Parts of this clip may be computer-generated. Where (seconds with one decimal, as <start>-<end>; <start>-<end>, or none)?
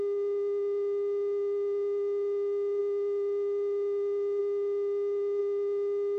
none